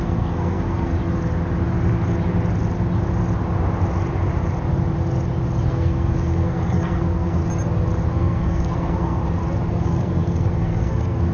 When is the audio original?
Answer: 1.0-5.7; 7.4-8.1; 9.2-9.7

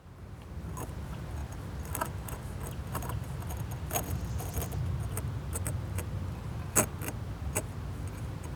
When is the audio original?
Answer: 0.0-8.6

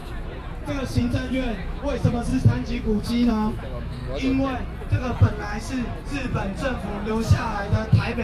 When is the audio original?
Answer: 0.0-1.0; 4.0-7.1

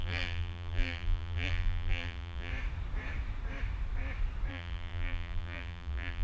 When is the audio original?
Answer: 2.5-4.5